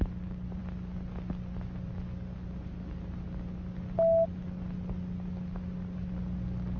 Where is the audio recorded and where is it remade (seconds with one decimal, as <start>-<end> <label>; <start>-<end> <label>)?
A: 0.0-6.8 recorded